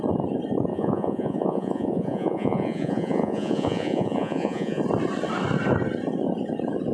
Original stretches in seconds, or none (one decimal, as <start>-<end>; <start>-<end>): 0.0-0.7; 4.8-6.9

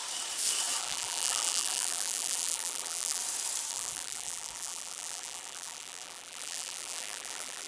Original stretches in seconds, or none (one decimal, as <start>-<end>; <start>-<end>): 0.0-0.8; 3.2-3.7

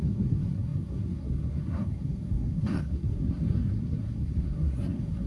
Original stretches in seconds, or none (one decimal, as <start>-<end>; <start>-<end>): none